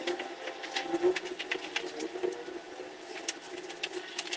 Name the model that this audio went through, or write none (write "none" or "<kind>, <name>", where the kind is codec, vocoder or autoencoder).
none